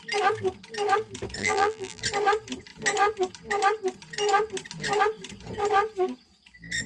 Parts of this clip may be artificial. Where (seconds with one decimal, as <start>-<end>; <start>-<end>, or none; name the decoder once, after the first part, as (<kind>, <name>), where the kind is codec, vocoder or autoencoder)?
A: 1.4-2.0 (vocoder, BigVGAN v2)